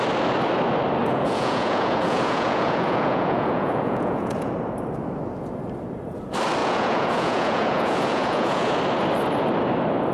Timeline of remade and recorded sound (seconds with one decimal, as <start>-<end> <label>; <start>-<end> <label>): 0.0-1.0 recorded; 1.0-4.5 remade; 4.5-6.6 recorded; 6.6-8.8 remade; 8.8-10.1 recorded